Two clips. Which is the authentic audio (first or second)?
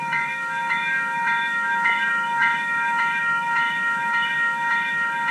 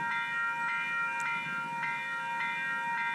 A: second